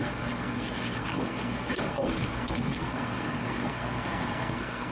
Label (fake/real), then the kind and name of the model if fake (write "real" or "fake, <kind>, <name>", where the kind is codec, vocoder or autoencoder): fake, codec, SNAC